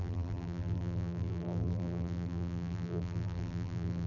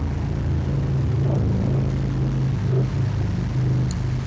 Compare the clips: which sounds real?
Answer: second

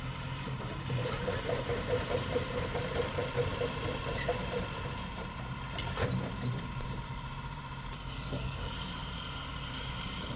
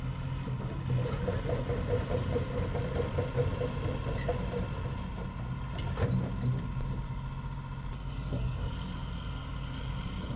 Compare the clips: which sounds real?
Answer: second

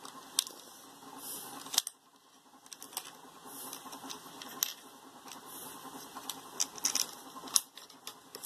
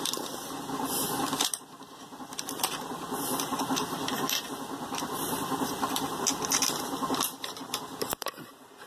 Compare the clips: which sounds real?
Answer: first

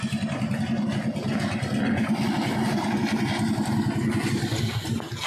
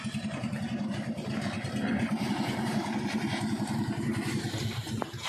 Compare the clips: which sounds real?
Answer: first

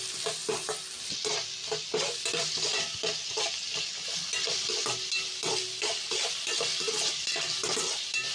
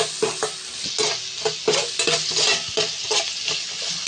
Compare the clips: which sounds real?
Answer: second